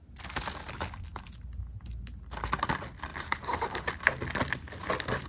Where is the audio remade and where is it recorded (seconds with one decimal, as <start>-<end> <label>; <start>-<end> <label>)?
0.0-3.1 recorded; 3.1-3.9 remade; 3.9-5.3 recorded